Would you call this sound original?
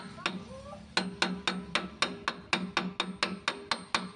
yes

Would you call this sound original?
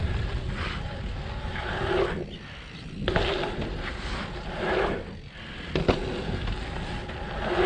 yes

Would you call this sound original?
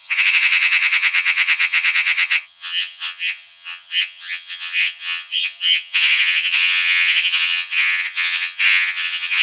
no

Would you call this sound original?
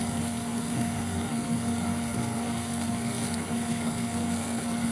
no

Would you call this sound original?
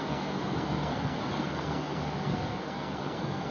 no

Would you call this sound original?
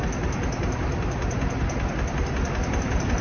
yes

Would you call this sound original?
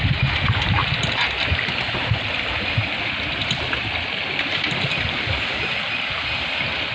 yes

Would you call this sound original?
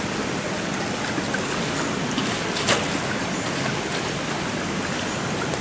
yes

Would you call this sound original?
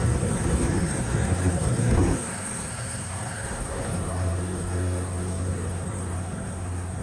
no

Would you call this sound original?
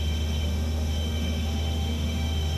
no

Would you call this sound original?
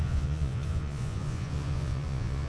no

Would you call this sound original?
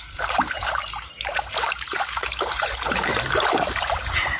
no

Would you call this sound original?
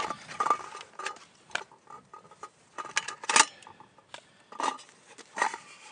yes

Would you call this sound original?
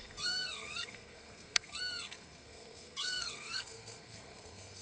no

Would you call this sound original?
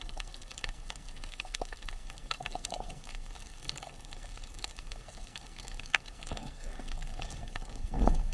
no